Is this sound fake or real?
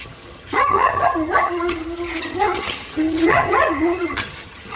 fake